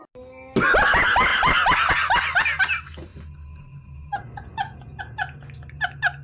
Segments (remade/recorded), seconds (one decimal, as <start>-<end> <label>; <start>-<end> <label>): 0.0-1.3 recorded; 1.3-1.9 remade; 1.9-3.1 recorded; 3.1-5.0 remade; 5.0-6.2 recorded